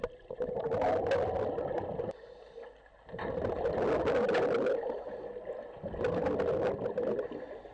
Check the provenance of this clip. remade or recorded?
recorded